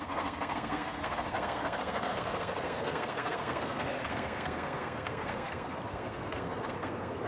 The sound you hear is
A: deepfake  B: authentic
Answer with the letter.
A